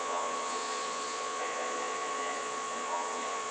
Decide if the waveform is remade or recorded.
remade